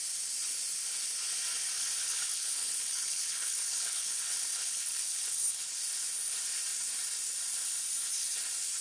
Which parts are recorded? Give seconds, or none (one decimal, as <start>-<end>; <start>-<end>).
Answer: 0.0-1.8; 5.8-8.8